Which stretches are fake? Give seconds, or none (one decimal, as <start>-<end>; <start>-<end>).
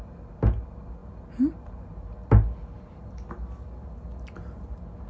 none